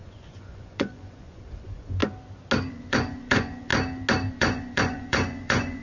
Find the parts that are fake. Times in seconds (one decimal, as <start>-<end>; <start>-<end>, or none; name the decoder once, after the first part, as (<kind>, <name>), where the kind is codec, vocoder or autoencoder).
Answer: 0.0-2.0 (vocoder, Vocos); 2.7-3.7; 4.3-5.8